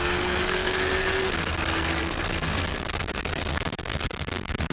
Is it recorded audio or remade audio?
remade